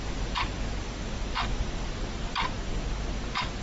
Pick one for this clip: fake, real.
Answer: real